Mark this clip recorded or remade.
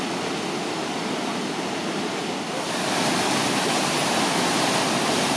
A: recorded